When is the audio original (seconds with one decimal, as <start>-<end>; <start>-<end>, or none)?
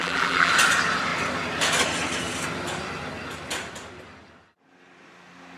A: 0.5-5.6